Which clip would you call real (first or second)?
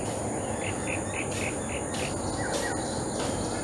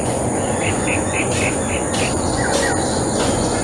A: first